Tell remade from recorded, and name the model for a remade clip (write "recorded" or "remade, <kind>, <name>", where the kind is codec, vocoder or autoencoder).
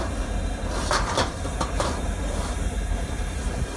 remade, vocoder, BigVGAN v2